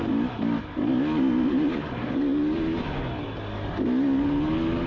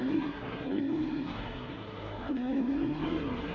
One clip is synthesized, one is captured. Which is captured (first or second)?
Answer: first